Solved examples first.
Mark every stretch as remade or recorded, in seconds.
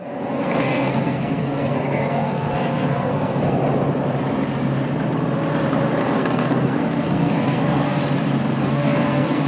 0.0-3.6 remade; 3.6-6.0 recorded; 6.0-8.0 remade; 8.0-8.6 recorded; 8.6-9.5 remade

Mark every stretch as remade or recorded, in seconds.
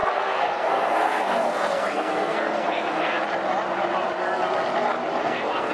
0.0-3.2 remade; 3.2-5.2 recorded; 5.2-5.7 remade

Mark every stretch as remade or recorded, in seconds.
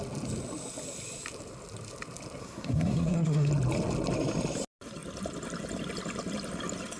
0.0-2.4 recorded; 2.4-3.5 remade; 3.5-7.0 recorded